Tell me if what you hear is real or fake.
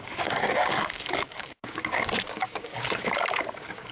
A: fake